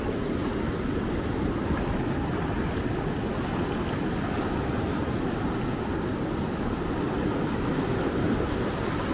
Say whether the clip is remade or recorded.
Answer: recorded